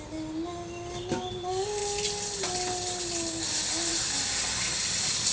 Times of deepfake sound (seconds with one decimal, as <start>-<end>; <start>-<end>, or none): none